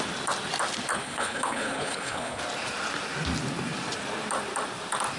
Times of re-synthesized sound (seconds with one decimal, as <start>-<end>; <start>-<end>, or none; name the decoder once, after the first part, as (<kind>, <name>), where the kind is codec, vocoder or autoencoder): 0.9-2.4 (codec, HILCodec)